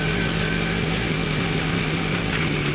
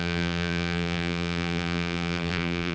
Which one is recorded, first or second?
first